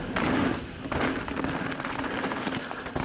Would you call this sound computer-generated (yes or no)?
no